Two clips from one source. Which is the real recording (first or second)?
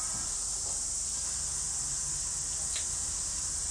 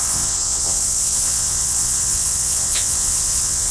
first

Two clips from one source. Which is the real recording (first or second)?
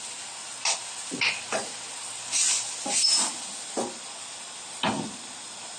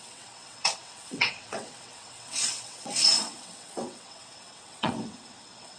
first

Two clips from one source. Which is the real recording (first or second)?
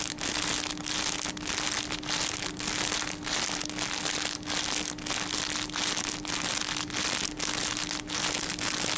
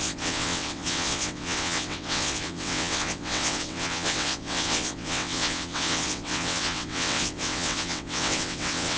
first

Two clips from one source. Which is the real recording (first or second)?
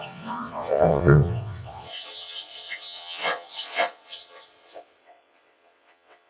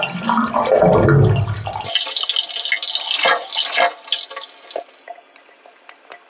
second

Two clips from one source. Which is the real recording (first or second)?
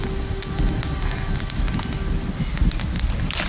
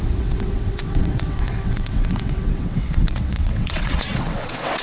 first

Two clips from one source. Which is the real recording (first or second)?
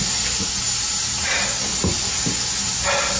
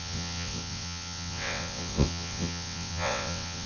first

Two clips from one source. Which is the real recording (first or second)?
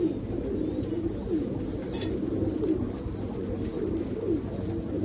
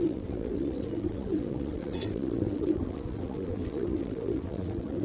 first